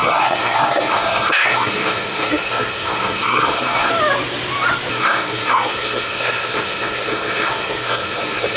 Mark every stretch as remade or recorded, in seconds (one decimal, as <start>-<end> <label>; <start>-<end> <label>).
0.0-3.9 remade; 3.9-4.9 recorded; 4.9-8.6 remade